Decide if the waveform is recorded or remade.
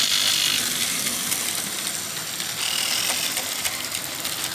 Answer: recorded